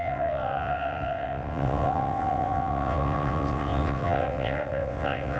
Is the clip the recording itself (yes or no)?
no